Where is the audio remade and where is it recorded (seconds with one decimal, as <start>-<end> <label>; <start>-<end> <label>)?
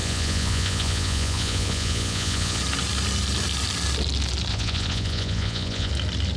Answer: 0.0-2.6 remade; 2.6-4.5 recorded; 4.5-5.9 remade; 5.9-6.4 recorded